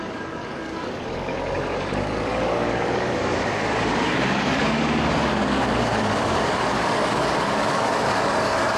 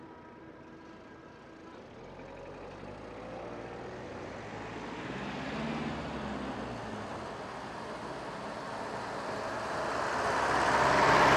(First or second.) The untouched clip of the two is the second